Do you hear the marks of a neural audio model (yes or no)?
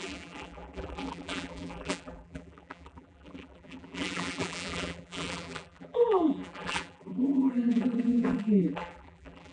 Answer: yes